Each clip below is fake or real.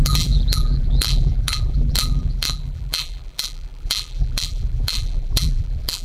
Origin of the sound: fake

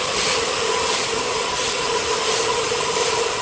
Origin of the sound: real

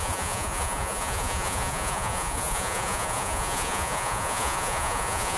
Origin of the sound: fake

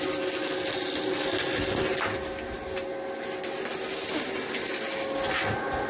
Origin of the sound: real